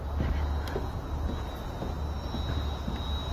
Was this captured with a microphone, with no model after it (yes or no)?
yes